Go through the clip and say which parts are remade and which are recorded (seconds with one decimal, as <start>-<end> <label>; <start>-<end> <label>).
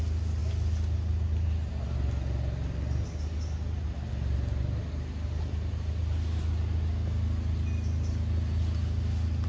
0.0-9.5 recorded